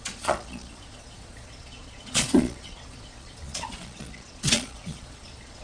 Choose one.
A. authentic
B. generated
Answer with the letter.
B